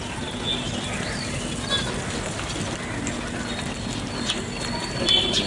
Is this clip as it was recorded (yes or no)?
yes